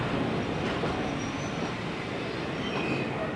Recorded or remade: recorded